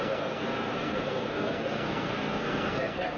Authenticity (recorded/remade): remade